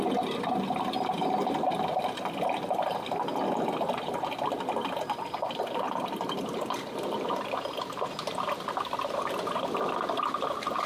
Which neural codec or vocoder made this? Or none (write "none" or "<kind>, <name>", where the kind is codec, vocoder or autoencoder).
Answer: none